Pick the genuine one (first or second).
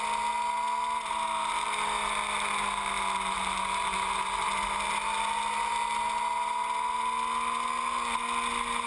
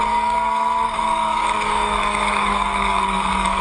first